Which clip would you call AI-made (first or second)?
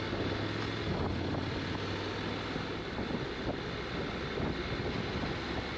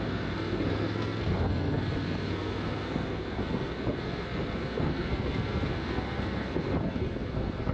second